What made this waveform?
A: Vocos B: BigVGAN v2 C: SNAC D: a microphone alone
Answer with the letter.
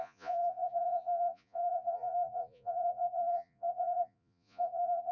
A